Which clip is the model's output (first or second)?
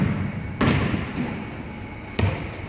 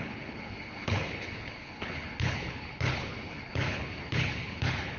second